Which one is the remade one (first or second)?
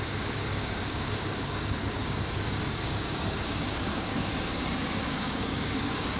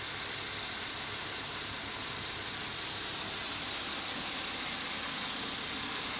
first